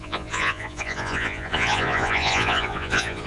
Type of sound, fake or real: fake